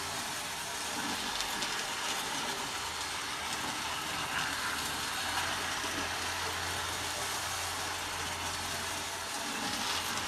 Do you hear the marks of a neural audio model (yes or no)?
no